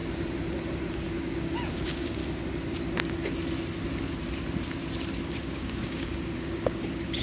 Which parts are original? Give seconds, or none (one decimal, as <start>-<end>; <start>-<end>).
0.0-0.9; 2.2-5.3